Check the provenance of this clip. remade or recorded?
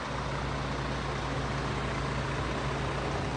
recorded